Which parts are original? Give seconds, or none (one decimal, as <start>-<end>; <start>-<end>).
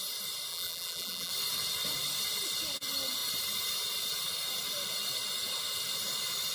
0.0-0.5; 1.3-6.5